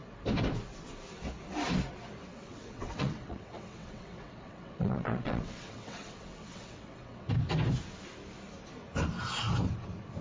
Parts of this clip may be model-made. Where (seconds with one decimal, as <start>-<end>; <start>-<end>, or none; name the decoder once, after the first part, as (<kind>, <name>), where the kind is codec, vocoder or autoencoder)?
2.3-7.3 (vocoder, WaveNeXt)